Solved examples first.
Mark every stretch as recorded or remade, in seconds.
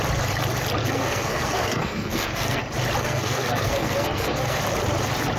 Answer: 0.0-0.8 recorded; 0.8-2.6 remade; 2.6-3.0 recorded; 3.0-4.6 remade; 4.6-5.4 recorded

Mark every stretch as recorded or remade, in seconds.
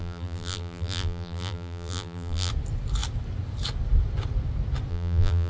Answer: 0.0-2.5 remade; 2.5-4.9 recorded; 4.9-5.5 remade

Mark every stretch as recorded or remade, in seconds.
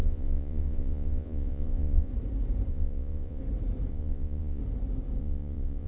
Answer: 0.0-2.1 remade; 2.1-2.7 recorded; 2.7-3.4 remade; 3.4-3.9 recorded; 3.9-4.6 remade; 4.6-5.2 recorded; 5.2-5.9 remade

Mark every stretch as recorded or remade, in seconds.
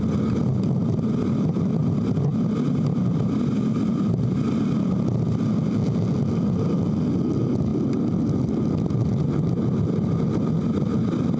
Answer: 0.0-11.4 recorded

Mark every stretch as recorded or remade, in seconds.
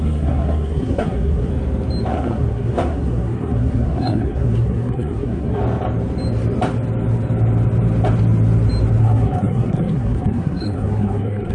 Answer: 0.0-1.5 remade; 1.5-2.1 recorded; 2.1-5.6 remade; 5.6-9.0 recorded; 9.0-11.5 remade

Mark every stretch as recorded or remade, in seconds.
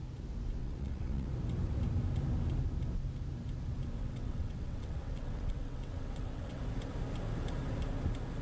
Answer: 0.0-0.6 recorded; 0.6-1.3 remade; 1.3-4.0 recorded; 4.0-6.6 remade; 6.6-8.4 recorded